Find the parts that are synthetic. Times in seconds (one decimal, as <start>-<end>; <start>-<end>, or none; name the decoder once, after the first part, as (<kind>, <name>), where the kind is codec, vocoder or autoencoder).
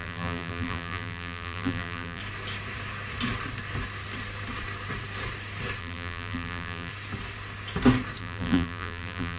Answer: 0.0-2.2 (vocoder, BigVGAN v2); 5.8-6.9; 8.2-9.4